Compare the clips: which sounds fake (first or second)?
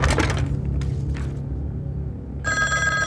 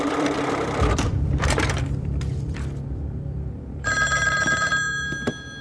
second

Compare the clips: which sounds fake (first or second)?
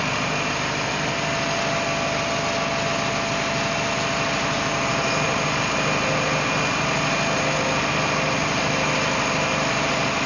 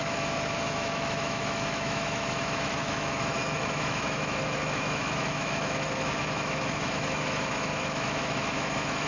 second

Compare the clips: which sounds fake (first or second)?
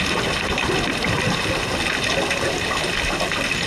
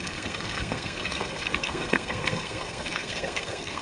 second